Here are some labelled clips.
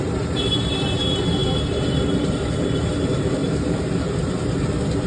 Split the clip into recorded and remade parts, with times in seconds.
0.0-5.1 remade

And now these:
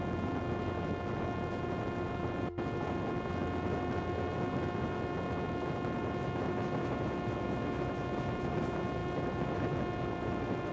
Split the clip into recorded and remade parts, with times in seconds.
0.0-10.7 recorded

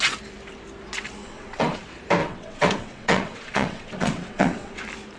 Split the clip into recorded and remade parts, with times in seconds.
0.0-1.2 recorded; 1.2-1.8 remade; 1.8-2.2 recorded; 2.2-4.8 remade; 4.8-5.2 recorded